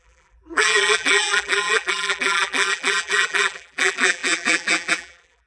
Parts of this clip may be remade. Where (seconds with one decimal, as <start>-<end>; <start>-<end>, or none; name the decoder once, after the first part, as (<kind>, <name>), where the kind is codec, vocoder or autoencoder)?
0.0-5.5 (vocoder, BigVGAN v2)